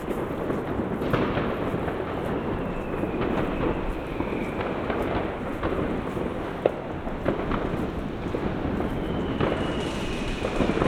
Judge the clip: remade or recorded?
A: recorded